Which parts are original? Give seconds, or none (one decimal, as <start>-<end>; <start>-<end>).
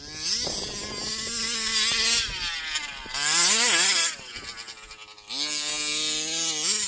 0.0-6.9